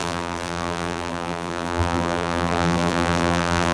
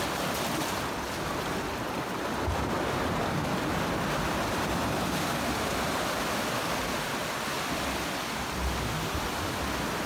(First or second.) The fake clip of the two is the first